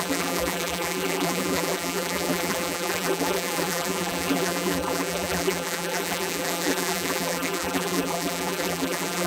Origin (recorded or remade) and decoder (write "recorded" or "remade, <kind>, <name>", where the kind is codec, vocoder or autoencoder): remade, vocoder, BigVGAN v2